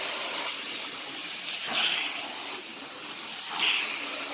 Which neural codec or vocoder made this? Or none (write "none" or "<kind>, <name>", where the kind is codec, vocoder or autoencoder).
none